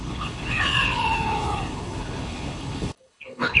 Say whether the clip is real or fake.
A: fake